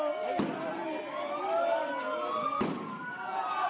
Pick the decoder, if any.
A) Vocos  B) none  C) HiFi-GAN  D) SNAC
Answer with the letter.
B